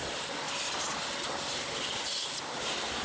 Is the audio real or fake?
real